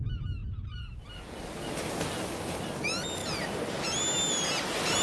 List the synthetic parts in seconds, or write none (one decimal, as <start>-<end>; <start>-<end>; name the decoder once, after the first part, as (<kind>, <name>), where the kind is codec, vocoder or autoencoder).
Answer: none